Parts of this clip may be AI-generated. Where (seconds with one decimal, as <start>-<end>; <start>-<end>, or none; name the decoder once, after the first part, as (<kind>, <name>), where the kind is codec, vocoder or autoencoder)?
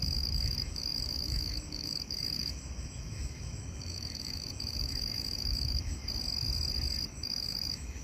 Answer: 0.0-6.0 (autoencoder, DAC-VAE); 7.1-8.0